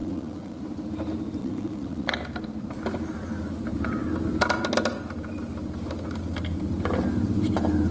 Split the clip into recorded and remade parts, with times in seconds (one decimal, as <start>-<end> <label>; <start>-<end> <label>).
0.0-0.6 remade; 0.6-1.4 recorded; 1.4-2.1 remade; 2.1-7.9 recorded